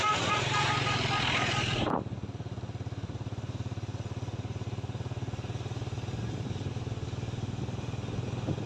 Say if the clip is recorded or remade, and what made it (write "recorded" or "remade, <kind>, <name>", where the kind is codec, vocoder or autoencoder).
recorded